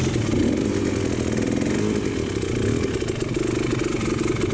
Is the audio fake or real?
real